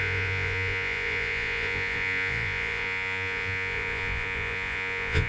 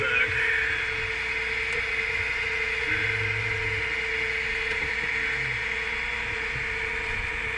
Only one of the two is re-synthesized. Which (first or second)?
first